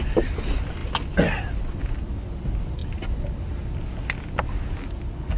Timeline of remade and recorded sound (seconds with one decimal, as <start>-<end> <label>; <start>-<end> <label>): 0.0-5.4 recorded